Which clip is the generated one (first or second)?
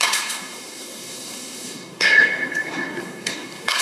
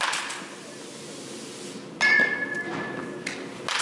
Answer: first